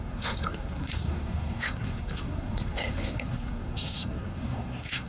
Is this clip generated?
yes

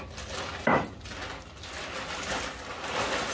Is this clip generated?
no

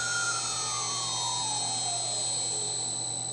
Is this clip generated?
no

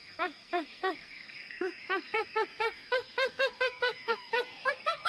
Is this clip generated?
yes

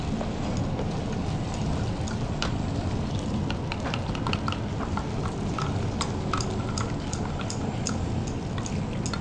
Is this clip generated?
no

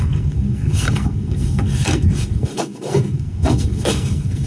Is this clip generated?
yes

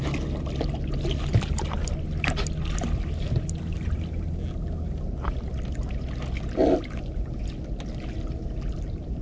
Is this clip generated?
no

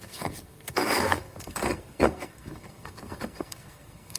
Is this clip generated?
yes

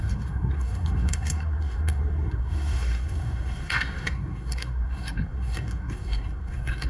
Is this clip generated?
yes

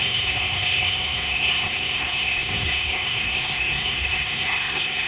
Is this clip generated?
yes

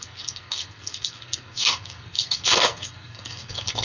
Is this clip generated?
yes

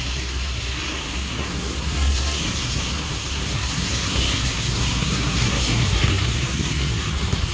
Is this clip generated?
yes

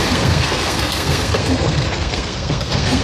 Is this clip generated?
yes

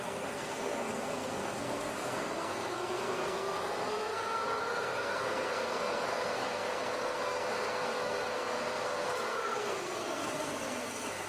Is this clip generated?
yes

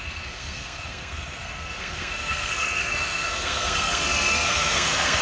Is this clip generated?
yes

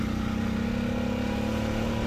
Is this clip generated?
no